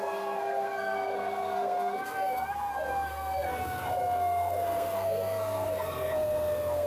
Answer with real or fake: fake